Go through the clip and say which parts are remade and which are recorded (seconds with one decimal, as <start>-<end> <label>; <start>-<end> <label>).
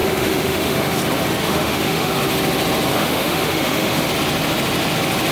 0.0-1.0 remade; 1.0-1.4 recorded; 1.4-2.1 remade; 2.1-2.9 recorded; 2.9-4.1 remade; 4.1-5.3 recorded